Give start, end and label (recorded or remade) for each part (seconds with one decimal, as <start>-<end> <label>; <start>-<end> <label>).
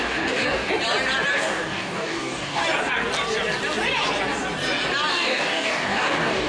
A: 0.0-0.7 remade; 0.7-1.3 recorded; 1.3-2.6 remade; 2.6-5.1 recorded; 5.1-6.5 remade